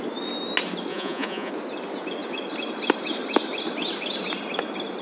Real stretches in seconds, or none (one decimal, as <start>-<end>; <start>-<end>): 0.0-0.9; 1.5-5.0